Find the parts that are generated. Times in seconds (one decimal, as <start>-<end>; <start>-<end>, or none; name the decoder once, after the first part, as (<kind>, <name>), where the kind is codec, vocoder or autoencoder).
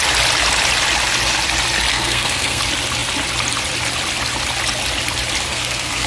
1.9-2.6 (codec, SNAC); 5.5-6.1